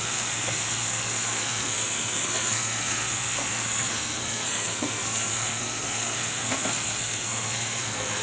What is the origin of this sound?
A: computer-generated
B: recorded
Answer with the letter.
A